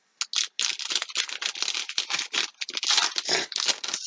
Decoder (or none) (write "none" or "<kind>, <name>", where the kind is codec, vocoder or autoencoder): none